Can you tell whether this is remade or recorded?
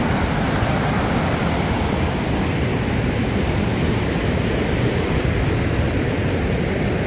recorded